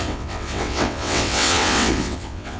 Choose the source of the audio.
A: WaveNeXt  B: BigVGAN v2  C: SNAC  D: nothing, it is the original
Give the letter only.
A